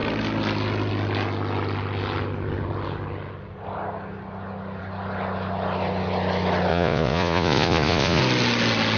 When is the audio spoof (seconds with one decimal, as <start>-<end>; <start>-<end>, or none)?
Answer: 6.7-8.2